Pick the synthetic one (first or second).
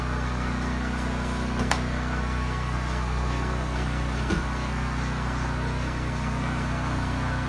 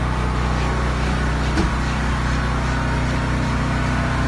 first